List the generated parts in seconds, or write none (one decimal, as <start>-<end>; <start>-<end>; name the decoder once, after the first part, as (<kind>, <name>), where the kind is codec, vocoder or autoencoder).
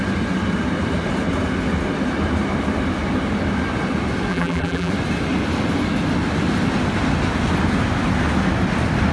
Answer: 4.3-4.9 (vocoder, BigVGAN v2)